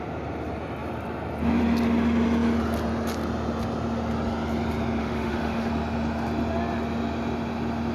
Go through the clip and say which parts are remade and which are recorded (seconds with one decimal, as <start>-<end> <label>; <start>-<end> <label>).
0.0-5.0 recorded; 5.0-5.7 remade; 5.7-7.9 recorded